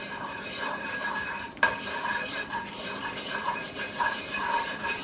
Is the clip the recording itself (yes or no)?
no